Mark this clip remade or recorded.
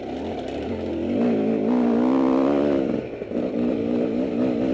recorded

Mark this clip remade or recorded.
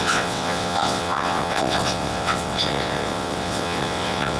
remade